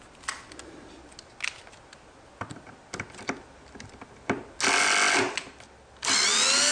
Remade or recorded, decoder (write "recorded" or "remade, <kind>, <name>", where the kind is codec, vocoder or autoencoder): recorded